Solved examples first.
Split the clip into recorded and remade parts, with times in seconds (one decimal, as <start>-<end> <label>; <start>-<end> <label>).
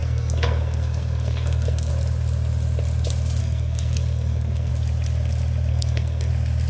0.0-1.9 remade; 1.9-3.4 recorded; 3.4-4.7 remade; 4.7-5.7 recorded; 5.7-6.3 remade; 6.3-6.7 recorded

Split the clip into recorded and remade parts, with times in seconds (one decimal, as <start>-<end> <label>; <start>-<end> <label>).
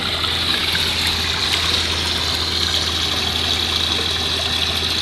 0.0-5.0 recorded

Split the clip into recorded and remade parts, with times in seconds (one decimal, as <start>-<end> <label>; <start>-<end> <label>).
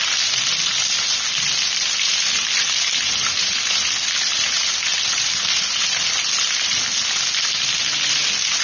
0.0-8.6 recorded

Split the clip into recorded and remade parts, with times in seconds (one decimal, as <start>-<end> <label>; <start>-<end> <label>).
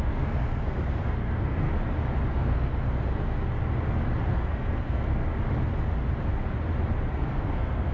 0.0-1.7 remade; 1.7-2.3 recorded; 2.3-2.7 remade; 2.7-4.3 recorded; 4.3-5.1 remade; 5.1-7.1 recorded; 7.1-7.9 remade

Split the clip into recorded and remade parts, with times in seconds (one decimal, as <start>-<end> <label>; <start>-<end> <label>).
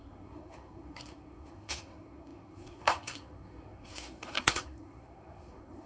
0.0-5.9 remade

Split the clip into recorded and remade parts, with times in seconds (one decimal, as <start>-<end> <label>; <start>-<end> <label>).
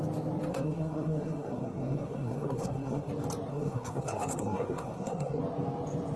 0.0-0.5 recorded; 0.5-3.1 remade; 3.1-3.5 recorded; 3.5-5.4 remade; 5.4-6.2 recorded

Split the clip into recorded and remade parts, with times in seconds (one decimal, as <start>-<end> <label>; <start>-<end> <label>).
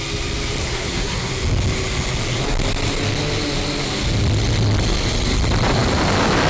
0.0-0.6 recorded; 0.6-1.3 remade; 1.3-6.5 recorded